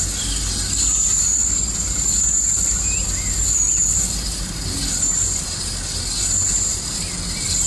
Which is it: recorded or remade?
recorded